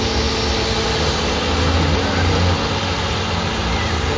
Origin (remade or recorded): recorded